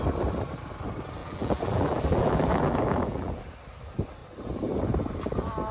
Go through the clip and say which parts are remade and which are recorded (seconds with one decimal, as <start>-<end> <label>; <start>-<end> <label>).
0.0-1.2 recorded; 1.2-3.4 remade; 3.4-5.7 recorded